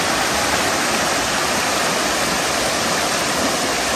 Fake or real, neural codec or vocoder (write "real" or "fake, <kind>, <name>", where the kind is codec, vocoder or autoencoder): real